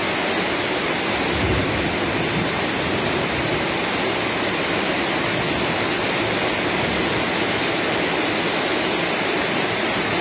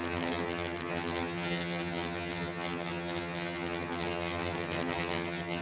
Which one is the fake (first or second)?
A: second